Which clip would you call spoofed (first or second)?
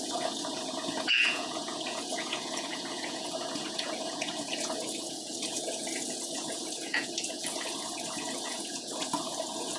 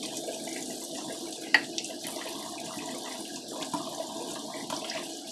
first